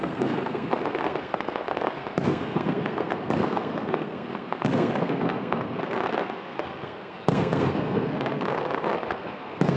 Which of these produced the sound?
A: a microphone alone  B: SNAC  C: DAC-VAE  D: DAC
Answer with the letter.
B